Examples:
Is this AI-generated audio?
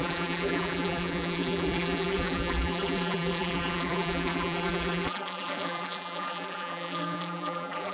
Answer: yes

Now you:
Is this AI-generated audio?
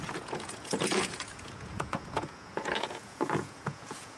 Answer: yes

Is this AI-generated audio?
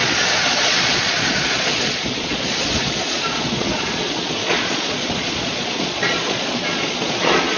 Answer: yes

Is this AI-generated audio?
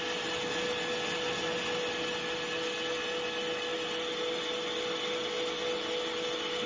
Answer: no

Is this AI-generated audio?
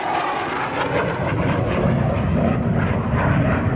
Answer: no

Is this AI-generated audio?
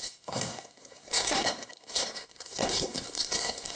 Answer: yes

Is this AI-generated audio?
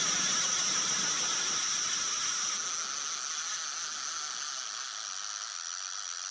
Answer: no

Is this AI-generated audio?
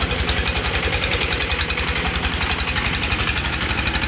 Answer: no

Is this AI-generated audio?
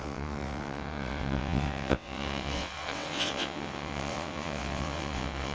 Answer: yes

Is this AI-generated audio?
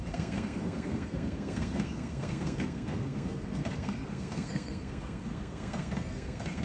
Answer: yes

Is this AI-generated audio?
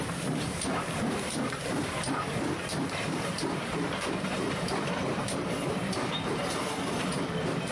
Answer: yes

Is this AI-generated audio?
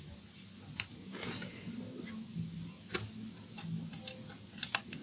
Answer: no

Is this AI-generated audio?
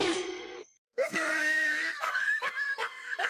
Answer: yes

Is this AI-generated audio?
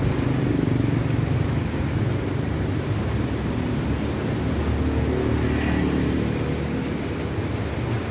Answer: no